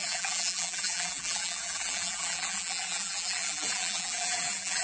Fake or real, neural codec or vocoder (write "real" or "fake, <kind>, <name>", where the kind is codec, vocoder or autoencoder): fake, vocoder, BigVGAN v2